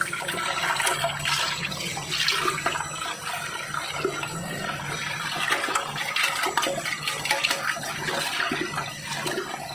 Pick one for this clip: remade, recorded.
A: recorded